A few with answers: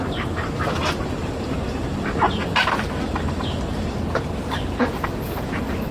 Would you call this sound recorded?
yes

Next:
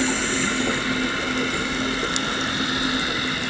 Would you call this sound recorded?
yes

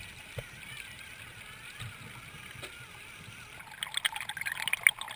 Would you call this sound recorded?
yes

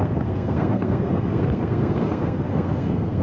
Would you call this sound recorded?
no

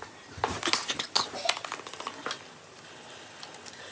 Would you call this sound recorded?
yes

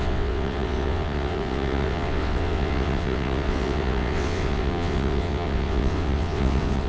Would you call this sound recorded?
no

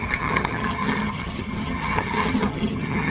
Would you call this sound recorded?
no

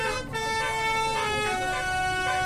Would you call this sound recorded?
yes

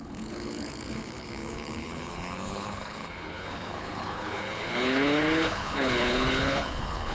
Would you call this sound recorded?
no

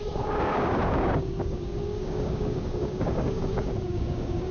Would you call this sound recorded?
no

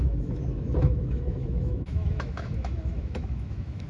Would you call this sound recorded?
no